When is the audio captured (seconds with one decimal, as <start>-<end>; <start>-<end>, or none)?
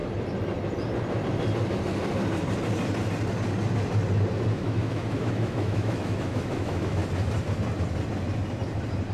0.0-4.5; 7.0-9.1